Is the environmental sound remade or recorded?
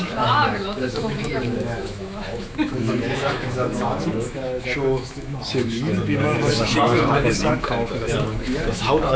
remade